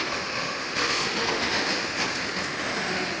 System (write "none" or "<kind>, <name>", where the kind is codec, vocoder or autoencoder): autoencoder, DAC-VAE